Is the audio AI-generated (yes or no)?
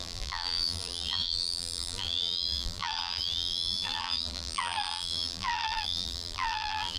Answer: yes